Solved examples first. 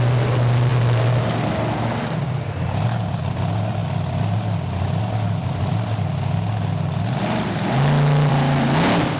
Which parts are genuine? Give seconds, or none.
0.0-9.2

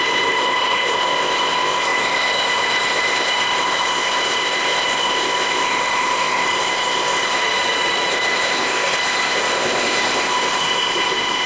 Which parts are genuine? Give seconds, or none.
7.4-8.1

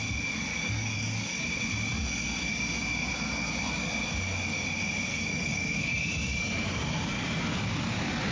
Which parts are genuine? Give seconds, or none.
0.0-0.5; 1.4-5.1; 6.0-8.3

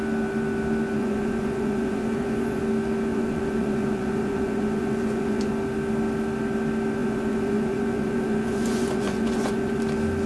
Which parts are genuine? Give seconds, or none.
0.0-1.0; 2.6-3.1; 5.5-7.0; 9.8-10.3

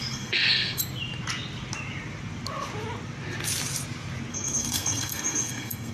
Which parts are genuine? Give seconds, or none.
0.8-4.3

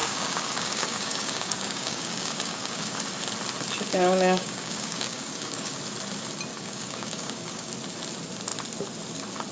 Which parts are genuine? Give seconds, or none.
3.0-3.9; 5.8-6.5; 7.7-9.5

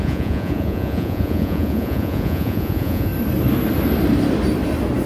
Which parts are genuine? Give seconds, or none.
3.1-5.1